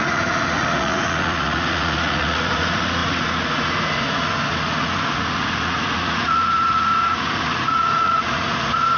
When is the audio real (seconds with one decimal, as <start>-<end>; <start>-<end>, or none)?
none